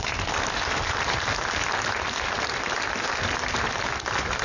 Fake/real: real